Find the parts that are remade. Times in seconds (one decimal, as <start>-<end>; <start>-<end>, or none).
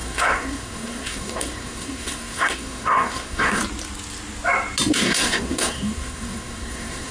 0.0-3.6; 4.9-7.1